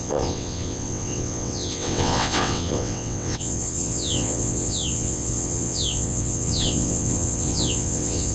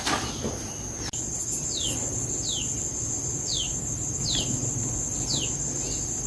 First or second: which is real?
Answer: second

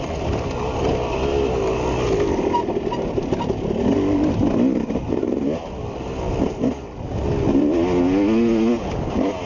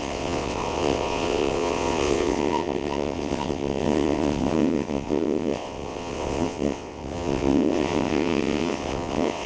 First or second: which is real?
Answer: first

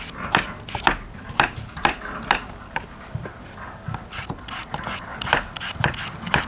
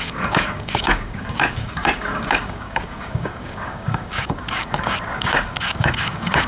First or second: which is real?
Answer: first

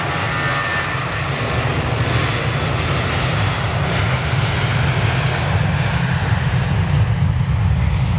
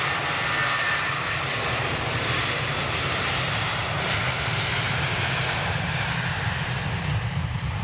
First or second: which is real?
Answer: first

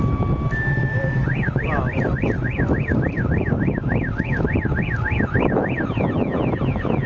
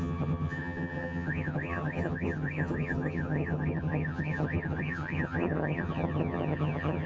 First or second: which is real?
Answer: first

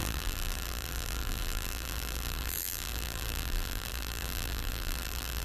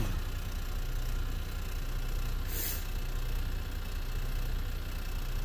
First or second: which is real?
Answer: second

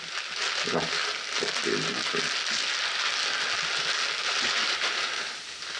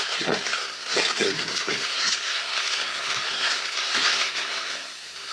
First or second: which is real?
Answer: first